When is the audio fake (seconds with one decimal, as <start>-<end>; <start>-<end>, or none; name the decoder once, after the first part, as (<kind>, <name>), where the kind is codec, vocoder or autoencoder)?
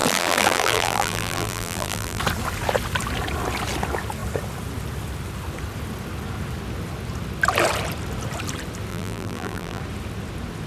0.0-2.2 (vocoder, BigVGAN v2); 8.9-9.8